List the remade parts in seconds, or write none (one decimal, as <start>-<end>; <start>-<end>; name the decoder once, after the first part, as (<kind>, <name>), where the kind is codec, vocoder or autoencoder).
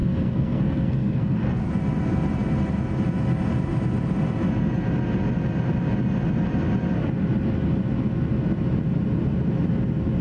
0.0-1.7 (codec, SNAC)